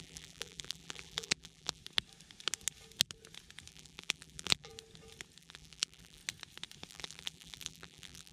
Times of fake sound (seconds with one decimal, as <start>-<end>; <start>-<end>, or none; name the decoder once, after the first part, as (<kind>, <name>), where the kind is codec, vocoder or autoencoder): 0.0-1.8 (vocoder, BigVGAN v2); 3.7-4.7; 5.4-6.2; 6.9-8.3